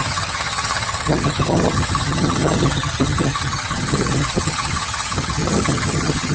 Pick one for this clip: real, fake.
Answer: fake